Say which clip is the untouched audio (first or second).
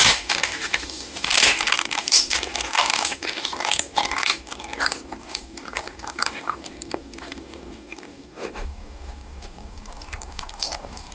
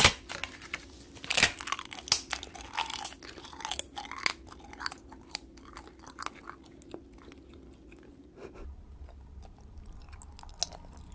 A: second